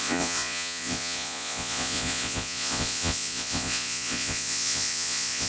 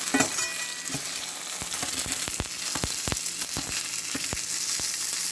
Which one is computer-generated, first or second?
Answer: first